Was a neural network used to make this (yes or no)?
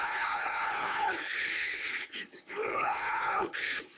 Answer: yes